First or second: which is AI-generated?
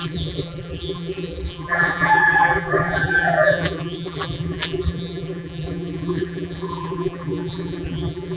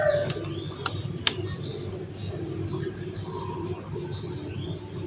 first